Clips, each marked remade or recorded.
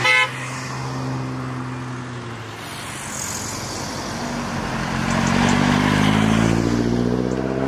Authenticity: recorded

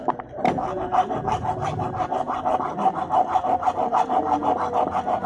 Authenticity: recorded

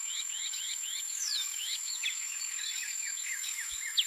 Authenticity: remade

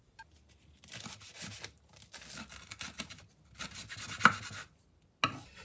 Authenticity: recorded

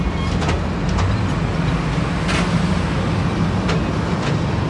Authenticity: recorded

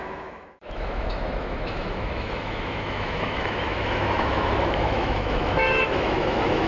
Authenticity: remade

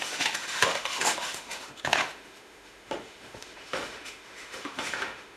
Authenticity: remade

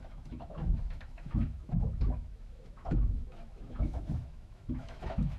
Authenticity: remade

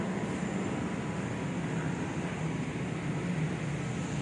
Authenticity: recorded